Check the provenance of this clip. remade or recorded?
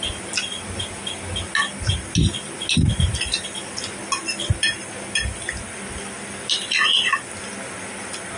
recorded